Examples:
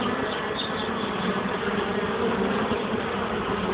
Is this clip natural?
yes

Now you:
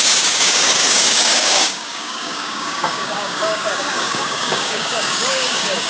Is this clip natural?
no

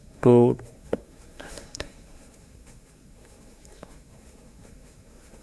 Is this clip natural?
no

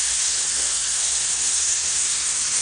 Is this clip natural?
no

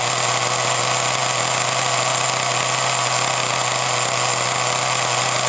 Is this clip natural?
yes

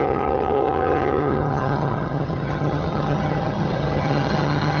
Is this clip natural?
no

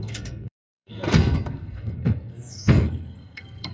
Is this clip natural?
no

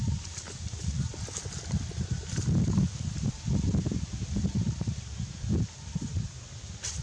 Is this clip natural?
yes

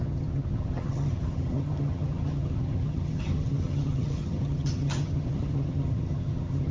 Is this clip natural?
no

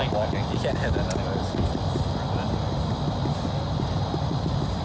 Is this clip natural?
yes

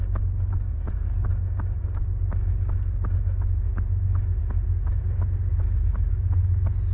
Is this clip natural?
yes